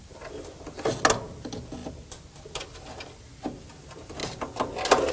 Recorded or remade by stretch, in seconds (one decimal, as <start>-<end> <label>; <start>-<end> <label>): 0.0-5.1 recorded